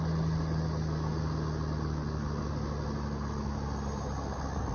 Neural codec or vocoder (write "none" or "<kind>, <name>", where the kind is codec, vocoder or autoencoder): none